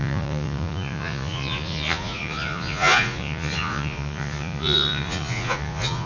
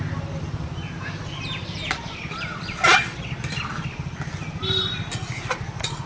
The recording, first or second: second